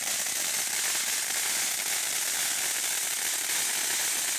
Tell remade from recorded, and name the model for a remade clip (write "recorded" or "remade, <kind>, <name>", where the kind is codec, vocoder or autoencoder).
recorded